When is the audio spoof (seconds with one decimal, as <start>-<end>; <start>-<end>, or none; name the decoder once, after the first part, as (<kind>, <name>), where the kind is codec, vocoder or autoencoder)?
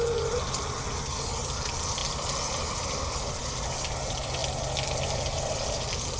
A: none